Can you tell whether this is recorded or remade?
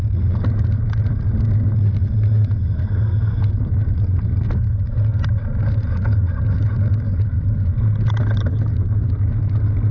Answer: recorded